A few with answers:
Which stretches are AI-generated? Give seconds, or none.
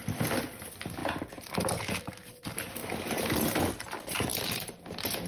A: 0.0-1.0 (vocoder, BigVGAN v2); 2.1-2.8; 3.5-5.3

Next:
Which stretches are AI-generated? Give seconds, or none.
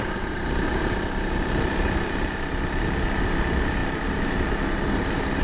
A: none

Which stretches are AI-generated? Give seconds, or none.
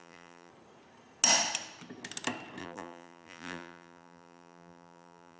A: 0.0-0.5 (vocoder, BigVGAN v2); 2.6-5.4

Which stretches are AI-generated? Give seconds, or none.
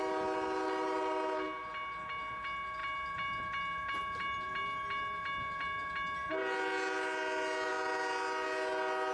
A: none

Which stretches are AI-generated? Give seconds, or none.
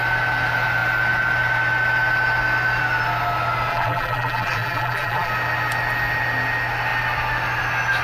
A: 3.7-5.3 (vocoder, BigVGAN v2)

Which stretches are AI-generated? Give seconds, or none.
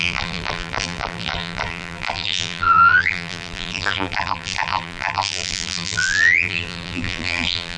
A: 0.0-7.8 (vocoder, BigVGAN v2)